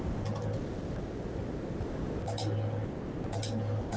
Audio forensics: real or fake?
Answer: real